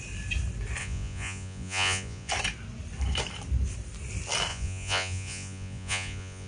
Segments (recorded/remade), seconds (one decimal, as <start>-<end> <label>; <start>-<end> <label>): 0.0-0.8 recorded; 0.8-2.3 remade; 2.3-4.5 recorded; 4.5-6.5 remade